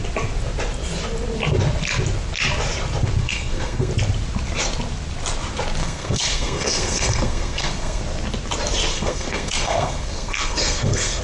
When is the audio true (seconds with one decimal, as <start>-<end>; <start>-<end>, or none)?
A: 0.0-3.2; 3.9-5.8; 8.0-8.9

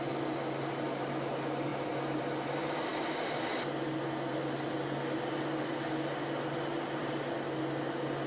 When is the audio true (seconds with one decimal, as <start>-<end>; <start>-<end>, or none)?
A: 0.0-8.3

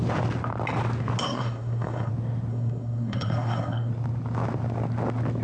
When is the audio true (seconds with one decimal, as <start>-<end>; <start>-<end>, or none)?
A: 0.0-1.2; 2.1-2.5; 3.9-5.4

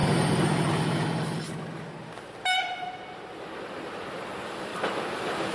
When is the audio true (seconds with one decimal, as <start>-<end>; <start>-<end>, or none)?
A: 0.0-5.5

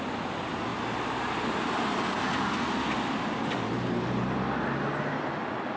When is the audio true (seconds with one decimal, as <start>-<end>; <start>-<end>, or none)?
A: 0.0-5.8

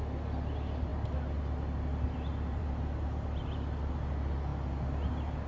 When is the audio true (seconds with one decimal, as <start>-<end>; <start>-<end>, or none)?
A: 0.0-5.5

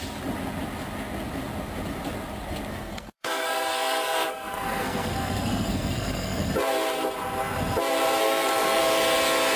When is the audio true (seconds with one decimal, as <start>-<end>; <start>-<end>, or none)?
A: 0.0-2.7; 6.5-8.2; 8.8-9.6

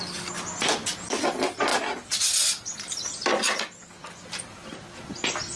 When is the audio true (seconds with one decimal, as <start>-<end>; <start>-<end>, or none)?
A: 0.0-5.6